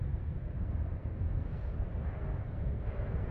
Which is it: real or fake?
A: fake